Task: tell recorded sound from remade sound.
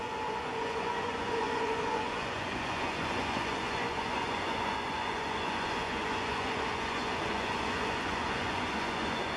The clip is remade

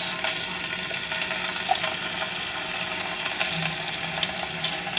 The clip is recorded